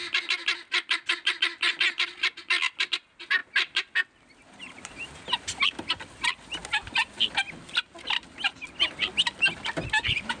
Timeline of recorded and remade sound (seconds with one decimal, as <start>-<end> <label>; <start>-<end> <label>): 0.0-10.4 recorded

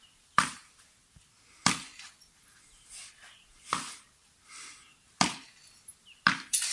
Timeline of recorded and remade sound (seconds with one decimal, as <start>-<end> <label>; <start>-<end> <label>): 0.0-6.7 recorded

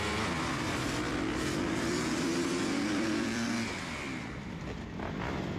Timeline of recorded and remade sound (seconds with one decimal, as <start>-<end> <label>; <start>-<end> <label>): 0.0-1.1 recorded; 1.1-4.5 remade; 4.5-5.6 recorded

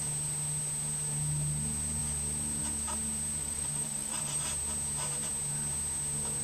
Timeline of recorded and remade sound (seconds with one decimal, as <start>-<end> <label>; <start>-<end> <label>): 0.0-3.4 recorded; 3.4-4.4 remade; 4.4-6.4 recorded

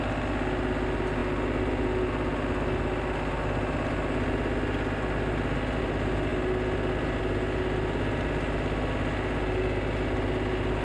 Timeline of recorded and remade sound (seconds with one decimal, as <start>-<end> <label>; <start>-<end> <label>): 0.0-10.8 recorded

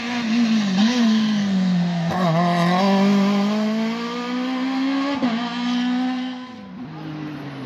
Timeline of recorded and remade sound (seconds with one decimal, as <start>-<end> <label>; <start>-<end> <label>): 0.0-0.8 recorded; 0.8-2.1 remade; 2.1-7.7 recorded